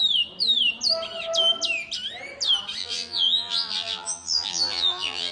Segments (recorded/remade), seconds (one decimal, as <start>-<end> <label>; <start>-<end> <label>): 0.0-2.8 recorded; 2.8-5.3 remade